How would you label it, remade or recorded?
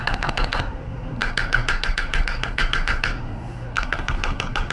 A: remade